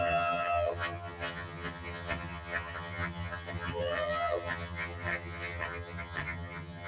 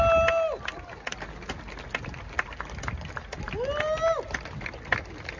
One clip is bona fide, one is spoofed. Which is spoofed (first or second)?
first